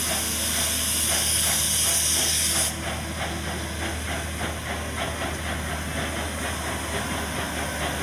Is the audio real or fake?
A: real